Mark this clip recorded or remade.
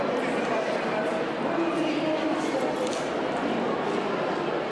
recorded